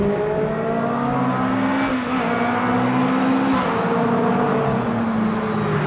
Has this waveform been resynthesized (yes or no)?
no